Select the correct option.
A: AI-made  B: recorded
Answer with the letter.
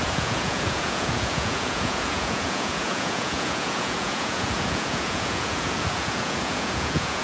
A